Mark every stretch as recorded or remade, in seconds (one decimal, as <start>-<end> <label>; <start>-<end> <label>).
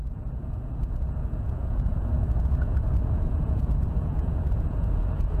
0.0-5.4 remade